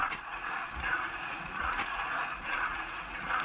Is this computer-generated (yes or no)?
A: yes